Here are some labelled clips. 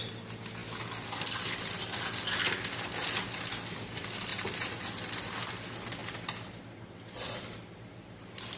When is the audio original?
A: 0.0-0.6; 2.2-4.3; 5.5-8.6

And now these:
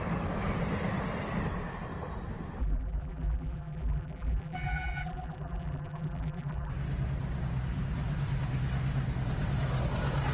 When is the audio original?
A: 0.0-2.6; 6.7-10.3

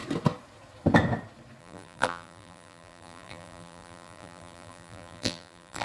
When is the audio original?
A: 0.0-1.6

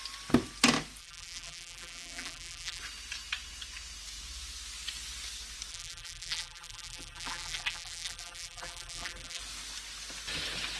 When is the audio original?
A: 0.0-1.0; 2.8-5.7; 9.4-10.8